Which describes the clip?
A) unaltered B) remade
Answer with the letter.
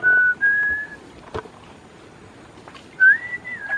A